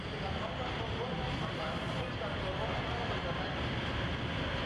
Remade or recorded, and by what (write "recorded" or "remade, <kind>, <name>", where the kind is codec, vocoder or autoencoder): recorded